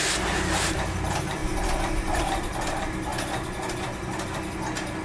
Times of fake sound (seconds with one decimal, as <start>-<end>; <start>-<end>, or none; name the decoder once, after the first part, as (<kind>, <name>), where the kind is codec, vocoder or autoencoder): none